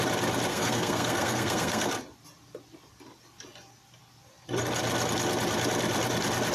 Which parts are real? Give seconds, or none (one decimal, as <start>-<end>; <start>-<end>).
0.0-0.5; 1.9-6.5